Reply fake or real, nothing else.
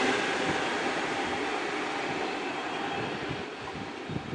real